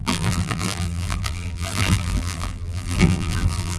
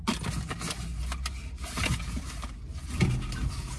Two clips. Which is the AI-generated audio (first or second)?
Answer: first